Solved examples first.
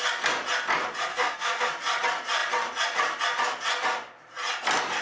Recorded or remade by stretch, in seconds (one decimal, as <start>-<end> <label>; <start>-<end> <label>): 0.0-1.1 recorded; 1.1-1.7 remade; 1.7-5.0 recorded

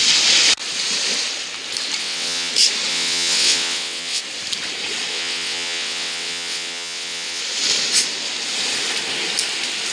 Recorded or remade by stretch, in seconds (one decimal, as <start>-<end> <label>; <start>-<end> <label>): 0.0-2.0 recorded; 2.0-2.5 remade; 2.5-2.9 recorded; 2.9-4.2 remade; 4.2-5.1 recorded; 5.1-7.4 remade; 7.4-9.9 recorded

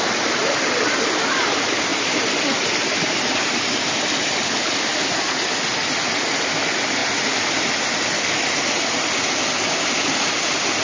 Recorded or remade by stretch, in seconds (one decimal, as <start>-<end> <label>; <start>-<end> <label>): 0.0-1.9 recorded; 1.9-4.0 remade; 4.0-7.0 recorded; 7.0-7.7 remade; 7.7-10.8 recorded